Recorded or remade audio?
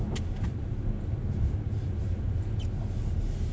recorded